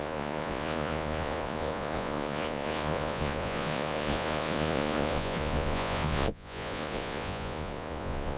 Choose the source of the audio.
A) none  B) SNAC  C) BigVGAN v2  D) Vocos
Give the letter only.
D